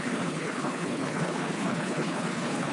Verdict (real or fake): fake